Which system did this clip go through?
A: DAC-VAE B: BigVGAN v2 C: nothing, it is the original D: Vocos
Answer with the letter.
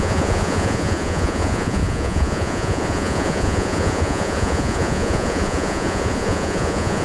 D